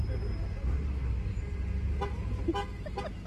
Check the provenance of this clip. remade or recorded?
recorded